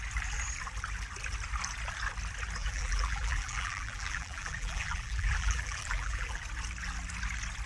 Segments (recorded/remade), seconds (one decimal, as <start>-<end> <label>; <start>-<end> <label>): 0.0-2.6 recorded; 2.6-6.4 remade; 6.4-7.7 recorded